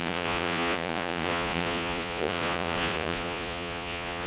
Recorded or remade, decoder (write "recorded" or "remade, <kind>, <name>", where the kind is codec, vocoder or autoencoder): remade, vocoder, Vocos